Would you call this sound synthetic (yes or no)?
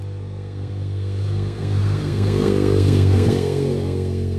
yes